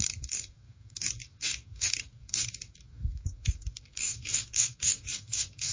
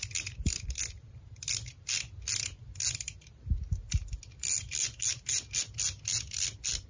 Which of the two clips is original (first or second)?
second